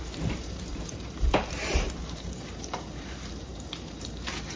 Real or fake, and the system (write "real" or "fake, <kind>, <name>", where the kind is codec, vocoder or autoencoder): fake, vocoder, BigVGAN v2